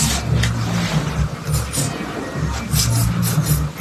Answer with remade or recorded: recorded